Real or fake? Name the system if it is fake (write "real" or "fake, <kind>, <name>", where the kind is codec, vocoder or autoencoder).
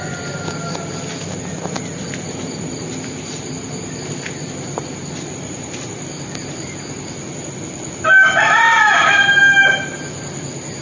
real